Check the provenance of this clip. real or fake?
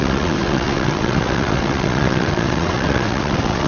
fake